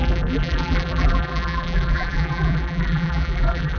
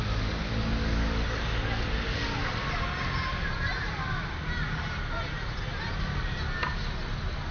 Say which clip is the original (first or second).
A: second